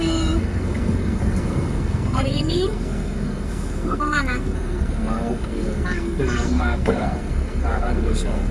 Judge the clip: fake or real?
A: fake